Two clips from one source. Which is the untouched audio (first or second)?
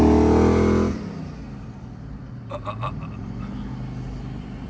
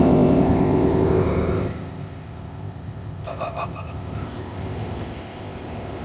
first